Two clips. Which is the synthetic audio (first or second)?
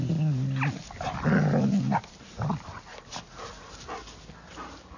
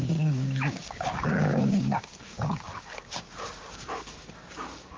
second